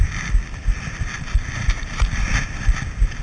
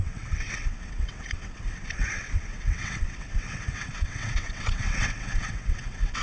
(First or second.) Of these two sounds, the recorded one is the first